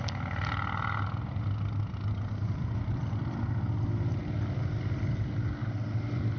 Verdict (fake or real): real